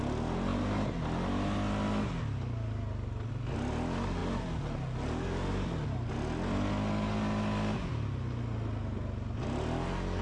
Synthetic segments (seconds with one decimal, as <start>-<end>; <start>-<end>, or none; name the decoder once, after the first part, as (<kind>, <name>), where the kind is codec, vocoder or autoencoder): none